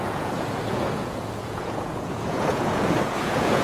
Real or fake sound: fake